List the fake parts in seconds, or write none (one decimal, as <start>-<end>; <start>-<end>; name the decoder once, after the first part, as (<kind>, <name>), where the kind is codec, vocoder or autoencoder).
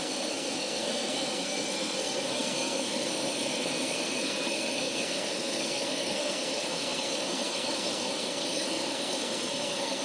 0.0-10.0 (codec, SNAC)